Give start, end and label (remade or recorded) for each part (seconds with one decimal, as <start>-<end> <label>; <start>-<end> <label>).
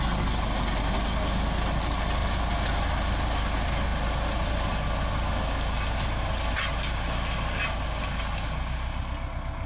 0.0-2.2 recorded; 2.2-2.7 remade; 2.7-3.9 recorded; 3.9-4.6 remade; 4.6-9.7 recorded